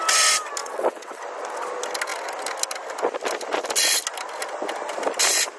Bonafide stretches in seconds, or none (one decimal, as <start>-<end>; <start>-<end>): 0.0-0.6; 1.2-5.6